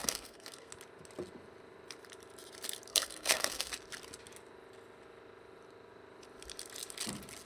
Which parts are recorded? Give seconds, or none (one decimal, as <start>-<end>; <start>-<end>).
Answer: 0.7-2.9; 3.7-7.4